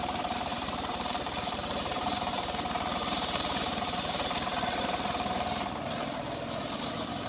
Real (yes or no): no